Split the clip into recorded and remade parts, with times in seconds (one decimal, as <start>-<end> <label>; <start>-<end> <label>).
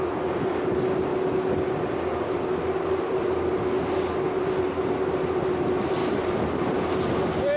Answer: 0.0-7.6 recorded